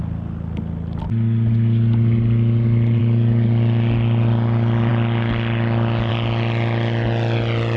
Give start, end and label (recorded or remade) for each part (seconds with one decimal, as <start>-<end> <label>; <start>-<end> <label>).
0.0-7.8 recorded